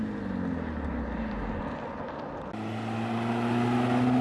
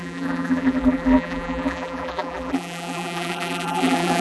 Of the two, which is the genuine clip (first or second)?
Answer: first